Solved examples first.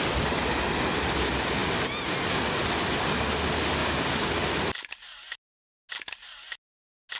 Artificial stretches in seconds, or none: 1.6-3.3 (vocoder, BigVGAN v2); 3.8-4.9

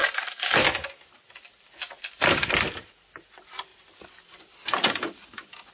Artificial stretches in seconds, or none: 2.1-5.7 (vocoder, BigVGAN v2)

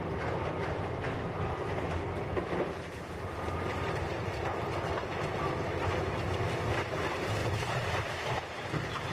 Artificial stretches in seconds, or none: 0.0-4.2 (vocoder, BigVGAN v2); 5.8-9.1

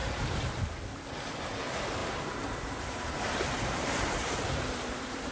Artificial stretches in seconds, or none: 0.0-0.8 (vocoder, BigVGAN v2); 2.0-5.3

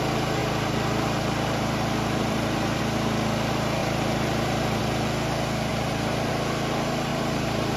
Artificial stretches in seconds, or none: 0.4-2.8 (vocoder, BigVGAN v2); 3.8-4.8; 5.7-6.3; 7.1-7.8